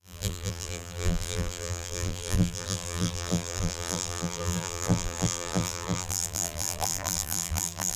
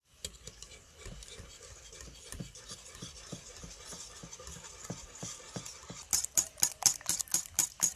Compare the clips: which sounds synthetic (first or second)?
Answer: first